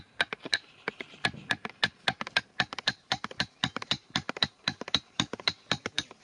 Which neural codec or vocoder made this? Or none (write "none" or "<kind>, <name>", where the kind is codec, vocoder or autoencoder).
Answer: vocoder, BigVGAN v2